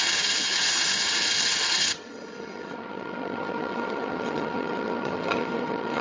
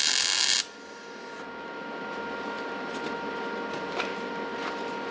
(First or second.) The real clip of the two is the second